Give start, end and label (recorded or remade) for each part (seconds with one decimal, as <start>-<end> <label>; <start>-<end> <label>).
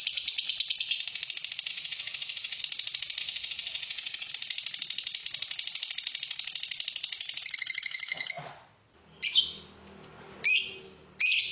0.0-1.7 recorded; 1.7-2.6 remade; 2.6-3.2 recorded; 3.2-4.3 remade; 4.3-11.5 recorded